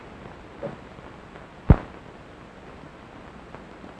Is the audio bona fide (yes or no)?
yes